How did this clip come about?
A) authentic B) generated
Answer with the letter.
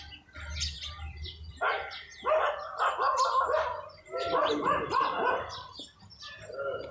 A